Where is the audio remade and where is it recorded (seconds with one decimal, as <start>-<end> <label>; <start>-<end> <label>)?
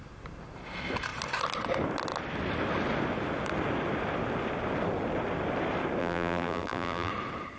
0.0-6.0 recorded; 6.0-7.1 remade; 7.1-7.6 recorded